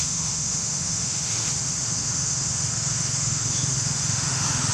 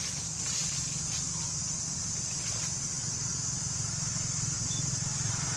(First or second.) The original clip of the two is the second